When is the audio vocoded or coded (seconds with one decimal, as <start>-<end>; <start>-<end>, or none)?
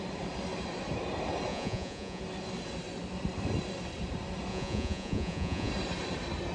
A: 1.5-2.2; 4.5-5.7